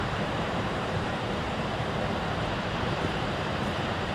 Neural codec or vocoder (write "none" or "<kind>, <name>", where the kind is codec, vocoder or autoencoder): vocoder, BigVGAN v2